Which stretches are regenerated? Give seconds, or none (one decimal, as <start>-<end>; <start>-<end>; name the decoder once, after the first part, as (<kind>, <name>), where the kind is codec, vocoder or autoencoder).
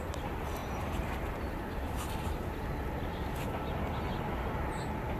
0.6-2.4 (vocoder, BigVGAN v2)